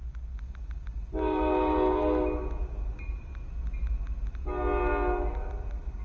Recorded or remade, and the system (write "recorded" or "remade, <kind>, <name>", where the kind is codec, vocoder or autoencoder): recorded